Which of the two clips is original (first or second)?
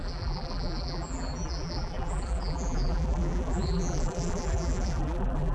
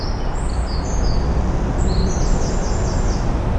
second